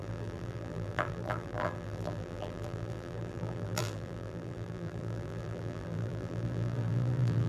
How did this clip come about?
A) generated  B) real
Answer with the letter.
A